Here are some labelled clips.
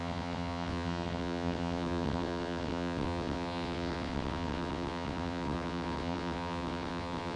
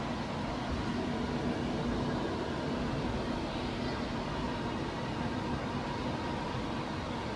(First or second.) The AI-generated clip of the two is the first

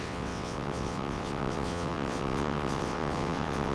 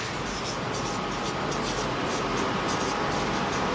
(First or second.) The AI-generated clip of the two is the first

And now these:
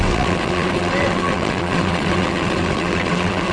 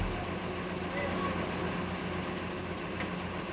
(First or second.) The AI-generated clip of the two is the first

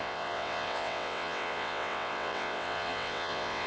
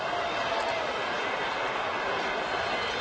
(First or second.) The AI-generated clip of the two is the first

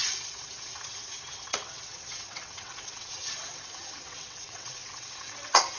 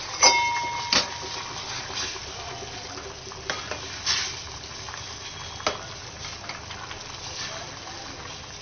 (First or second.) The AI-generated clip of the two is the first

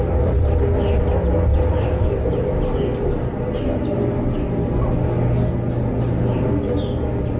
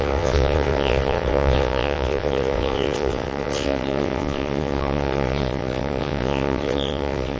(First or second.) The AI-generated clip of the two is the second